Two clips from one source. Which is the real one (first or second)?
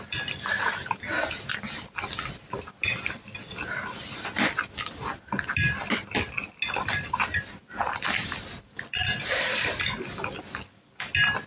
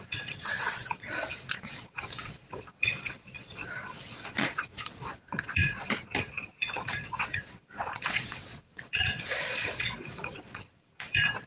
first